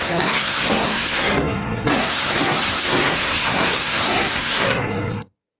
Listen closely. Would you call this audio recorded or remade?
remade